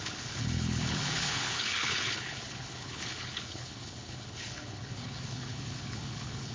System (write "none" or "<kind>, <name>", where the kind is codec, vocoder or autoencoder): codec, HILCodec